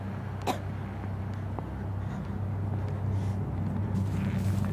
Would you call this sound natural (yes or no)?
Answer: yes